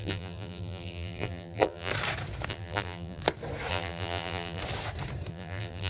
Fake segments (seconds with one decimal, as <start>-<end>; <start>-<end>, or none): 0.0-1.9; 2.5-3.2; 3.7-4.6; 5.3-5.9